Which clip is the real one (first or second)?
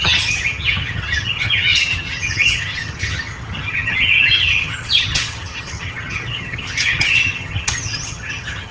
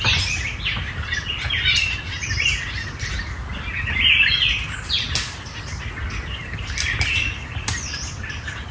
second